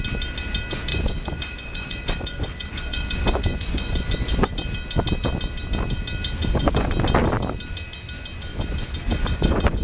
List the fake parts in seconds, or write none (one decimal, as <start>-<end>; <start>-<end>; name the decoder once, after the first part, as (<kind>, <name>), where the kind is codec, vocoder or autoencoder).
0.9-4.5 (vocoder, Vocos); 6.4-6.9; 8.5-9.8